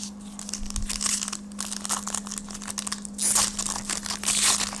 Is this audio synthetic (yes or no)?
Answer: no